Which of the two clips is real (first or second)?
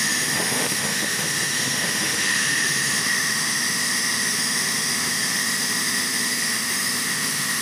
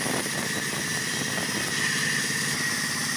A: second